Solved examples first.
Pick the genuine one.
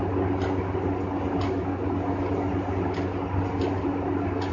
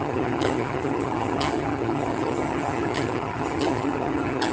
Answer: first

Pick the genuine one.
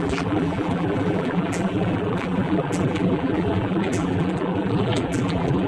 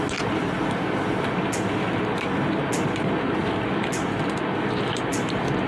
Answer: second